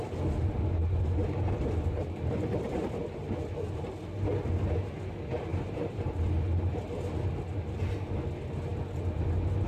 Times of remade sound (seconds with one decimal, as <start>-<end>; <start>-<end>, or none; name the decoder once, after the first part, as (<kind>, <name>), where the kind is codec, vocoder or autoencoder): 0.8-3.3 (vocoder, BigVGAN v2); 5.5-6.2